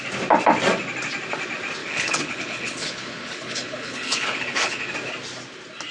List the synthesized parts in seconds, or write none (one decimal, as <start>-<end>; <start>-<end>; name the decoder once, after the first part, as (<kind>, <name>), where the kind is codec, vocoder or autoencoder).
1.8-4.9 (codec, HILCodec)